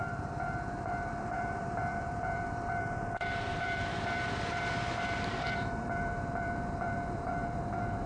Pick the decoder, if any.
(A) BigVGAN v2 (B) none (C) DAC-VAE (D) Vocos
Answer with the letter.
A